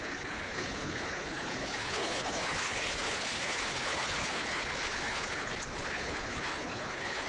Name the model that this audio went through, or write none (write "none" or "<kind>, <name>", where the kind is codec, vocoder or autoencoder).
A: codec, HILCodec